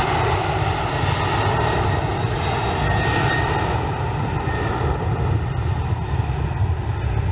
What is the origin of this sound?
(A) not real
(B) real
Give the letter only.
B